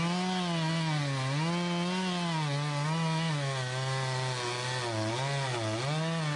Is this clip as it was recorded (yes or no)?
yes